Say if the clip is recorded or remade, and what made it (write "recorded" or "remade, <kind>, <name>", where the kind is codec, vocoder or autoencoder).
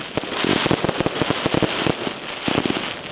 recorded